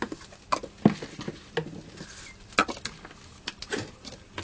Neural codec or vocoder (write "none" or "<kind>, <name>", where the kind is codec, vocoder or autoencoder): none